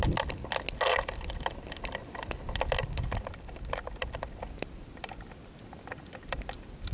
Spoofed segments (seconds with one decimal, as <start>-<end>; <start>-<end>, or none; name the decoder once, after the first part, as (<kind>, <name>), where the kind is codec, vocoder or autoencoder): none